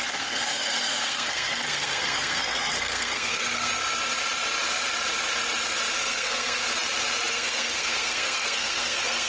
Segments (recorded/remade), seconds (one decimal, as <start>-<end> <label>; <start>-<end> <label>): 0.0-3.7 remade; 3.7-6.0 recorded; 6.0-6.6 remade; 6.6-7.3 recorded; 7.3-9.3 remade